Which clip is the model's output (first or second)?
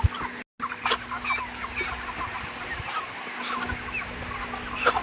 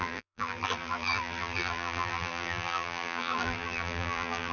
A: second